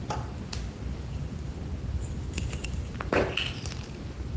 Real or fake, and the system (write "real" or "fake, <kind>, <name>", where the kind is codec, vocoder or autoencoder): real